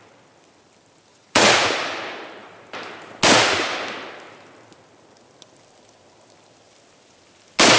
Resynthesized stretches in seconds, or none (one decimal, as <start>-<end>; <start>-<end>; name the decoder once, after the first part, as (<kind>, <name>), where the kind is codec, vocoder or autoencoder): 1.1-1.7 (vocoder, Vocos)